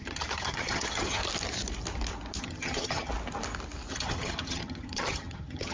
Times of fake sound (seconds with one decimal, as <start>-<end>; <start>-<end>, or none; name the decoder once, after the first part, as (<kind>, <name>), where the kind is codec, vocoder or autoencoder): 0.0-1.2 (vocoder, HiFi-GAN); 2.4-3.1; 3.9-5.7